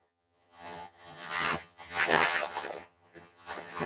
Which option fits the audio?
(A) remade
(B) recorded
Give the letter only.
A